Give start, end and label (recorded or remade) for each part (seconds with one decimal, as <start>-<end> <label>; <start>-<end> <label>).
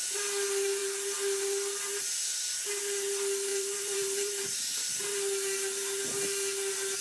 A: 0.0-3.5 recorded; 3.5-5.1 remade; 5.1-7.0 recorded